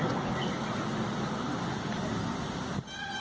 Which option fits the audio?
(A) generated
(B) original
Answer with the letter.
B